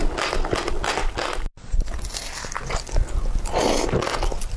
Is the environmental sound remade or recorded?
recorded